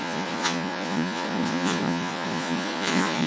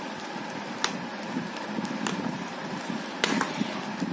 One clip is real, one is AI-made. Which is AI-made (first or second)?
first